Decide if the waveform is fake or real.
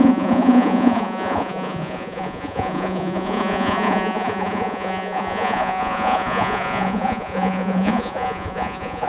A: fake